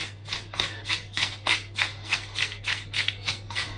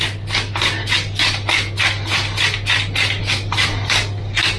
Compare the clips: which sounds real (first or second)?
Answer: second